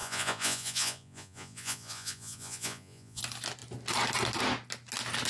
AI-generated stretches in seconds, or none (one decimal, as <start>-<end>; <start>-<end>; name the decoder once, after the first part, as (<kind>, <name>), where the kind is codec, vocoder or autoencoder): 0.0-3.2 (vocoder, Vocos)